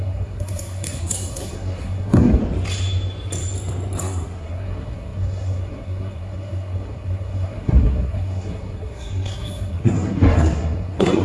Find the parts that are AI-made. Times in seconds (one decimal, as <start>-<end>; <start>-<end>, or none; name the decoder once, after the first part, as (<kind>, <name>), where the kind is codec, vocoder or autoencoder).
0.0-2.4 (codec, SNAC); 4.0-11.2